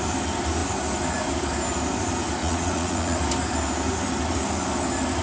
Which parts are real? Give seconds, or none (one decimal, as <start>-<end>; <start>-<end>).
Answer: 0.0-2.4; 3.2-5.2

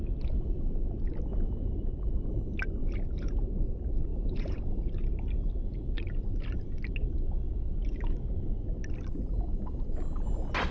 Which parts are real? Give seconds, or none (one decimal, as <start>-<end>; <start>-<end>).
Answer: 0.0-2.8; 3.4-4.1; 4.6-10.7

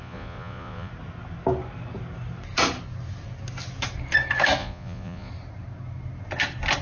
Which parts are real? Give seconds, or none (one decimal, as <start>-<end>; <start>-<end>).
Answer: 0.9-4.6; 5.3-6.8

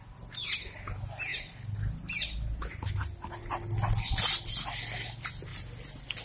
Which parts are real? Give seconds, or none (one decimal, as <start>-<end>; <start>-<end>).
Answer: 0.0-6.2

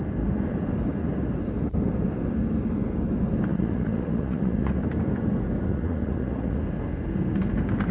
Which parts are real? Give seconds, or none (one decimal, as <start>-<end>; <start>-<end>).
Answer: 0.0-3.5; 4.8-5.7; 6.6-7.9

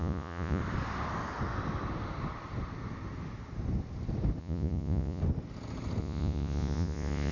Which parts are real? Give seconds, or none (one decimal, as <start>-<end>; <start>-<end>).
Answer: 0.6-4.4; 5.2-6.0

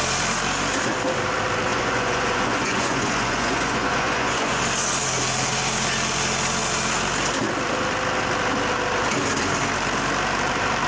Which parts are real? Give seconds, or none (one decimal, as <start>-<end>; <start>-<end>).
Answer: 0.0-1.7; 4.6-10.9

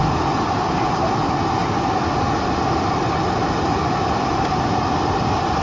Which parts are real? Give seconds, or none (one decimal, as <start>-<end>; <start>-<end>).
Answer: 0.0-5.6